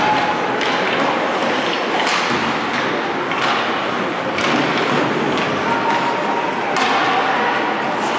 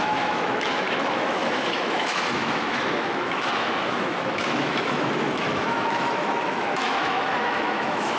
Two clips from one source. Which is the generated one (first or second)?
second